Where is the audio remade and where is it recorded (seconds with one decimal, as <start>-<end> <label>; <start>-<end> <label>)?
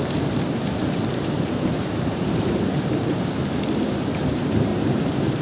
0.0-0.8 recorded; 0.8-3.1 remade; 3.1-4.7 recorded; 4.7-5.4 remade